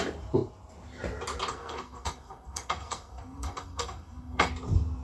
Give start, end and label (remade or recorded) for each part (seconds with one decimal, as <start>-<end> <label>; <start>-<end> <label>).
0.0-1.5 recorded; 1.5-4.5 remade; 4.5-5.0 recorded